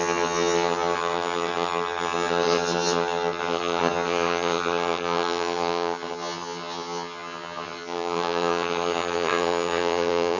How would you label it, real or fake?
fake